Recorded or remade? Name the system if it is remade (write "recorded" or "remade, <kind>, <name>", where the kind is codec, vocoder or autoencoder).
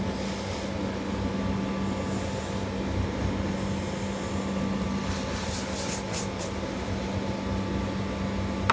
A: recorded